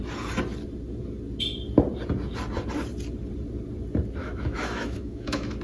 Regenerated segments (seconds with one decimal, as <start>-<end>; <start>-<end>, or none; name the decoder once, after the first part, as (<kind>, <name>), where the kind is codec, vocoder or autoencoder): 4.2-5.6 (autoencoder, DAC-VAE)